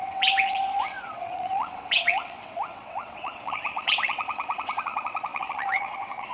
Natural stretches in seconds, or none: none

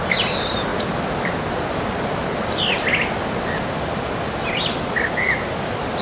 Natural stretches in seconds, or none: 0.0-6.0